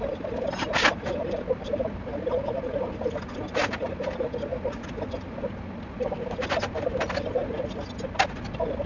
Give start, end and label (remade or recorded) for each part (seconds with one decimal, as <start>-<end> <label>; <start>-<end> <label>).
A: 0.0-8.9 recorded